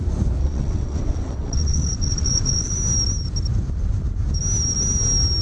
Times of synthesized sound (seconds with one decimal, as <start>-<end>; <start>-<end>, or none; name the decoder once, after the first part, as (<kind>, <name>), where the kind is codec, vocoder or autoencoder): 0.4-2.7 (vocoder, WaveNeXt)